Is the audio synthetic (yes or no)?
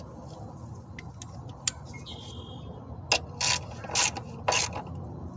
no